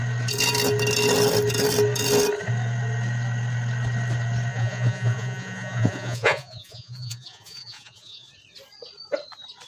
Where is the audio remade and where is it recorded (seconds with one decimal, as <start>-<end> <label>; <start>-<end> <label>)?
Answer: 0.0-4.5 recorded; 4.5-8.3 remade; 8.3-9.7 recorded